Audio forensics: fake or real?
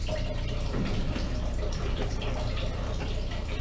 fake